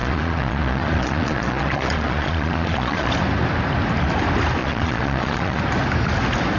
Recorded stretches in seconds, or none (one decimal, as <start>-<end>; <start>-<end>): 3.1-4.6; 5.6-6.6